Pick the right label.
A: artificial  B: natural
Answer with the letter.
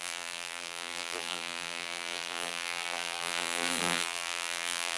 A